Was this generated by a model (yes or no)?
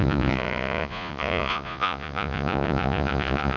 yes